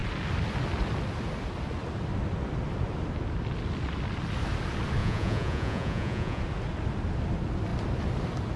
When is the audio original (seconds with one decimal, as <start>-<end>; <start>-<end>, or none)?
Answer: 0.0-5.0; 6.4-8.6